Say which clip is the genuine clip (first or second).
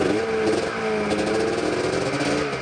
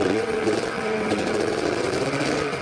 first